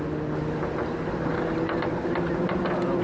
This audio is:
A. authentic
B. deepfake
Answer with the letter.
A